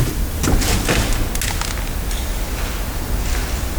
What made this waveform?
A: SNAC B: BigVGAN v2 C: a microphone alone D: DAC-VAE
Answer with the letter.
C